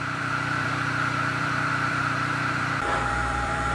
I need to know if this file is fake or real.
fake